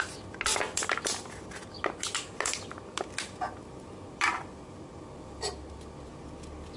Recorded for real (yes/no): yes